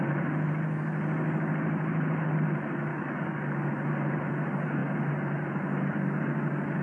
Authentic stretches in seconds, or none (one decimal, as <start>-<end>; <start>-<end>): 0.0-2.9; 3.7-6.8